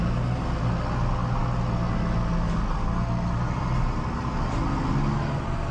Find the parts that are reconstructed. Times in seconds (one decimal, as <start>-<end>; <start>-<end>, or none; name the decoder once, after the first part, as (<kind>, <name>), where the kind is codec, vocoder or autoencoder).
none

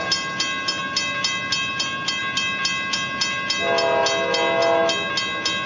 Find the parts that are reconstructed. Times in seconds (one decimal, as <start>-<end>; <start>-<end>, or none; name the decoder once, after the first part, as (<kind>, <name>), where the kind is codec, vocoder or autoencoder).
none

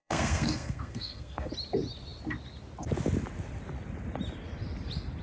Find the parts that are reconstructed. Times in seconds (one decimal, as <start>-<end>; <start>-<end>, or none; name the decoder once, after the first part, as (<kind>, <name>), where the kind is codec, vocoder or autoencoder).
0.0-1.5 (codec, SNAC)

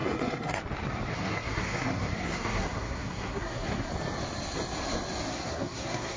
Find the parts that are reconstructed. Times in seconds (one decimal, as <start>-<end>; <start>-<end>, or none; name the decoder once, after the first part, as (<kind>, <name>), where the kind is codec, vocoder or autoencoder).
0.0-0.6 (codec, SNAC); 1.1-3.9; 5.3-6.2

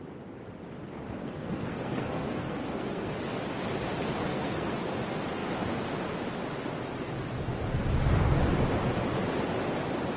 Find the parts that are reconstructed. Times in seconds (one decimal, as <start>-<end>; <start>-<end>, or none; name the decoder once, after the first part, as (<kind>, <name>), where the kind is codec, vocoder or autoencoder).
1.2-3.1 (codec, SNAC); 4.3-4.8

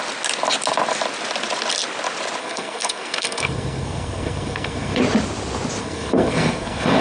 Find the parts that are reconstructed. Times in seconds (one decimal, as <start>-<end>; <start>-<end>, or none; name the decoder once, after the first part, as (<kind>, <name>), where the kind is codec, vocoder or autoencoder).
2.4-5.0 (codec, SNAC); 5.8-7.0